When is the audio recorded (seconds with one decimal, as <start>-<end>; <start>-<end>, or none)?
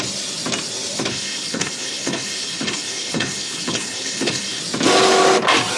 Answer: 0.0-1.1; 4.6-5.8